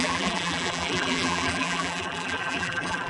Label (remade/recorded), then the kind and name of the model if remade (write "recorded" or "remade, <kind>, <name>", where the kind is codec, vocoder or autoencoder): remade, vocoder, BigVGAN v2